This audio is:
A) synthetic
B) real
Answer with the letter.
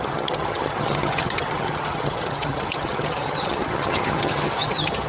A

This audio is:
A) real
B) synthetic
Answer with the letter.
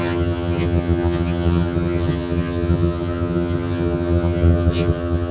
B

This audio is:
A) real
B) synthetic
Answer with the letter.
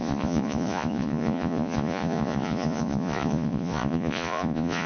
B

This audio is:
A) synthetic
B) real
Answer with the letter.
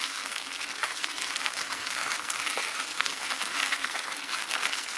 A